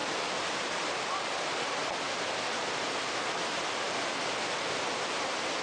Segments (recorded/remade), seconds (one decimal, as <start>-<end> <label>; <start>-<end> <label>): 0.0-0.7 remade; 0.7-5.6 recorded